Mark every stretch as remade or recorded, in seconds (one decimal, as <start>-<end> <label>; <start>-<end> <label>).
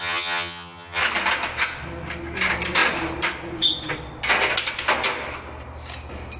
0.0-1.0 remade; 1.0-6.4 recorded